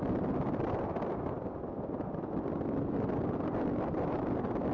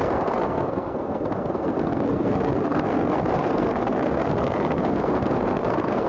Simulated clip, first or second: second